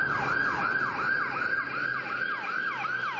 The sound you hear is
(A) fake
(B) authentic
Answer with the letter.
B